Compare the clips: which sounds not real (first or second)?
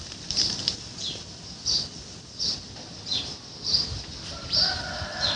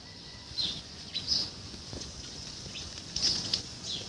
second